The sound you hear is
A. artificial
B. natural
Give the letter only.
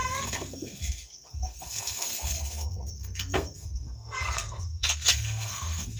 A